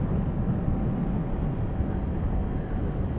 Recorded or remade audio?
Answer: recorded